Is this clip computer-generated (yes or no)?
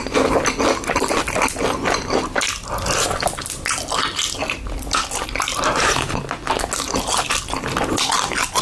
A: no